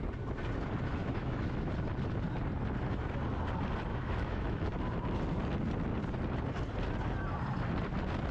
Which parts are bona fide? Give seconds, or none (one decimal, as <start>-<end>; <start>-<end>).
0.0-1.0; 1.7-3.9; 4.6-8.3